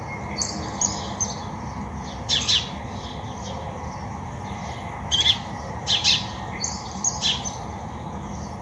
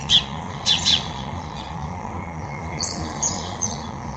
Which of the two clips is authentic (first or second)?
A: first